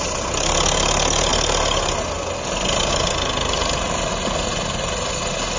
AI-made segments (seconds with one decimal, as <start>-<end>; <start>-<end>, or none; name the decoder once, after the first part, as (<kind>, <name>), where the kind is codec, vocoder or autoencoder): none

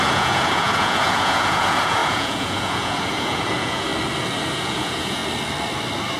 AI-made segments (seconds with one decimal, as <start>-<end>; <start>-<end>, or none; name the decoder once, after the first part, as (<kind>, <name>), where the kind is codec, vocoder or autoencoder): 0.0-3.9 (vocoder, Vocos); 4.5-5.2

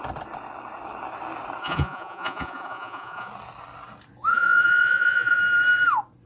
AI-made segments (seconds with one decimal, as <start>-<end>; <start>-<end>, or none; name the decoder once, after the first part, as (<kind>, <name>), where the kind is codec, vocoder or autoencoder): 1.6-3.3 (vocoder, Vocos); 4.3-5.4

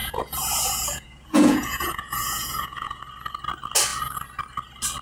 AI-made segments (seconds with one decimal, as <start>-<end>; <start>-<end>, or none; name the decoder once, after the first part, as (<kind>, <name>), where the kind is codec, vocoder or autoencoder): 0.0-3.0 (vocoder, Vocos)

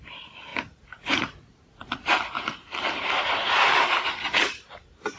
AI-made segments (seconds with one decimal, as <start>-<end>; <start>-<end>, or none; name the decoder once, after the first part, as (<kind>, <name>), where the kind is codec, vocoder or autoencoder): 0.5-2.2 (vocoder, Vocos)